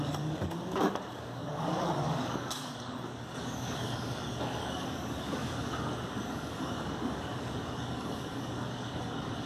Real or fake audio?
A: fake